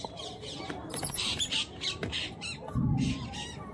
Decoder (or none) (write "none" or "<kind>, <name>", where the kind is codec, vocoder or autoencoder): vocoder, BigVGAN v2